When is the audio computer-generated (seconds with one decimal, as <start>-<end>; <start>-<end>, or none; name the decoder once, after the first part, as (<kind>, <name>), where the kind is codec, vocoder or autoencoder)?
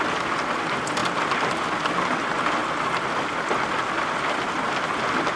none